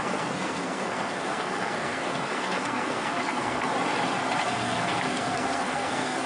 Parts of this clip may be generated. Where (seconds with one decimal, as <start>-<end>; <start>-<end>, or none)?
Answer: 0.0-3.7; 4.4-6.3